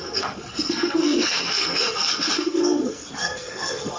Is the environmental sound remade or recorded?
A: remade